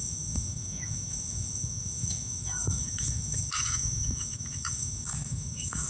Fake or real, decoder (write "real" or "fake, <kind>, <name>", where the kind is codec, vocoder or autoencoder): fake, autoencoder, DAC-VAE